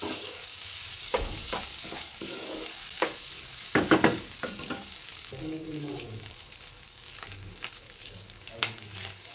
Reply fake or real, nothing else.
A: fake